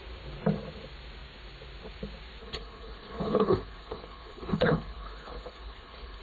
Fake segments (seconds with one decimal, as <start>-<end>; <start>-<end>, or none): 2.4-6.2